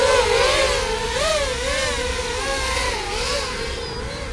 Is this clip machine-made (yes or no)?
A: no